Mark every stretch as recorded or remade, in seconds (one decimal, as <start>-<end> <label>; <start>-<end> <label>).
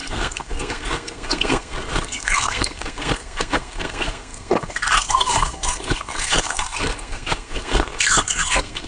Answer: 0.0-8.9 remade